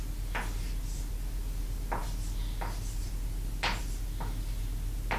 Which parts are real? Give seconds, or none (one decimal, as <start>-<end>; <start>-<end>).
0.0-5.2